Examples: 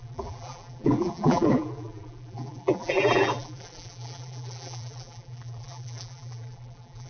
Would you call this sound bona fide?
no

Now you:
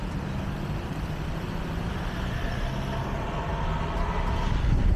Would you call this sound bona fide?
yes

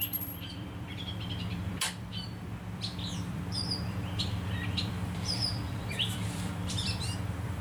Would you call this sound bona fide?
no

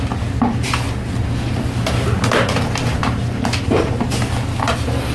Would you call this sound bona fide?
yes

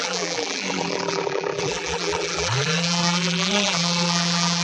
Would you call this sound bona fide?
no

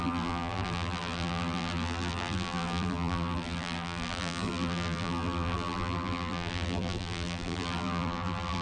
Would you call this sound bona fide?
no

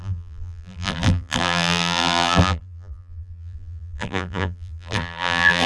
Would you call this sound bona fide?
no